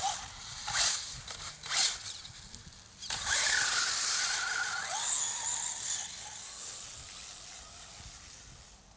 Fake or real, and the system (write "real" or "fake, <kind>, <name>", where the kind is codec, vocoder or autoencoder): real